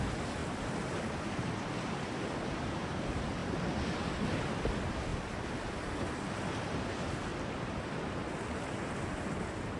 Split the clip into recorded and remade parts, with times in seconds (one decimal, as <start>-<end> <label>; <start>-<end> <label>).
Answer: 0.0-3.4 remade; 3.4-4.4 recorded; 4.4-7.3 remade; 7.3-9.4 recorded; 9.4-9.8 remade